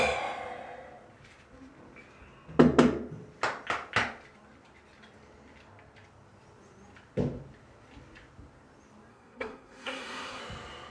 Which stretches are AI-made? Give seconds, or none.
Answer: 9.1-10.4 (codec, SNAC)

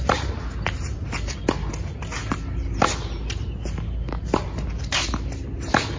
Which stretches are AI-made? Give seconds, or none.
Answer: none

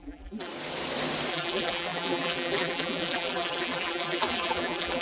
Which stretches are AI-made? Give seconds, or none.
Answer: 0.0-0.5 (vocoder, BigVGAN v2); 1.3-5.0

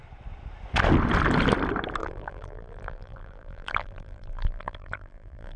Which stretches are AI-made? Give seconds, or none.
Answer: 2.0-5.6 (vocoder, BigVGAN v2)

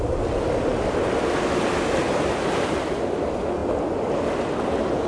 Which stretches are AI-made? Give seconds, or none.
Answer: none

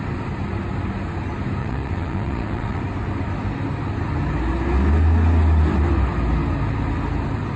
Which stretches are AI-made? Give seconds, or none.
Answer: 1.6-2.8 (vocoder, WaveNeXt)

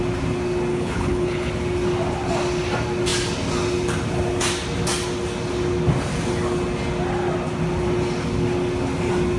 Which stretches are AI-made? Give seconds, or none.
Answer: 0.7-1.5 (codec, HILCodec)